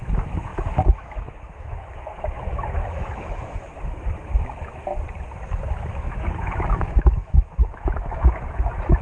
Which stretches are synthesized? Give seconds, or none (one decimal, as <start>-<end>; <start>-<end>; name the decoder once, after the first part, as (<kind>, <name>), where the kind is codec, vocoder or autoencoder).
0.0-4.9 (autoencoder, DAC-VAE); 5.7-9.0